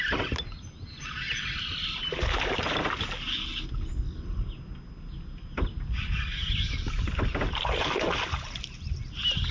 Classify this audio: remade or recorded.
recorded